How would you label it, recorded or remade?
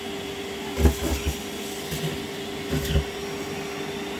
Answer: recorded